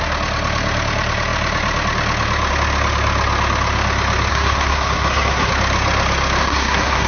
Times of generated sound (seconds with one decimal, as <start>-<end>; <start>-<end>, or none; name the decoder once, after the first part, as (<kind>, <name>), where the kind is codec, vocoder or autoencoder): 4.3-5.5 (codec, SNAC); 6.4-7.1